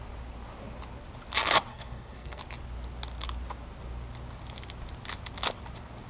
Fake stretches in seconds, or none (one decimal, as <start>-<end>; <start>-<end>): 1.7-2.4